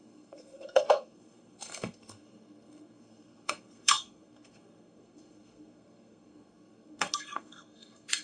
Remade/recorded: remade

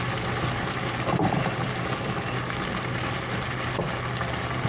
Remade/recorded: recorded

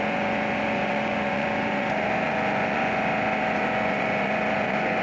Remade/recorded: remade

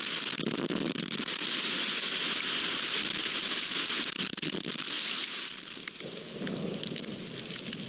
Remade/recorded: recorded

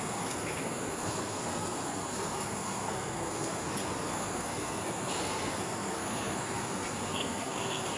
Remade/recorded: remade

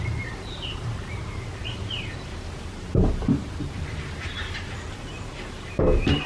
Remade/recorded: remade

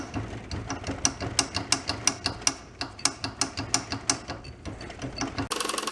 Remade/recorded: recorded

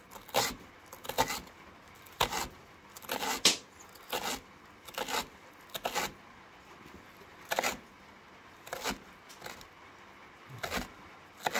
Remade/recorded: recorded